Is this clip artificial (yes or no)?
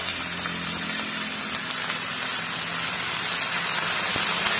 no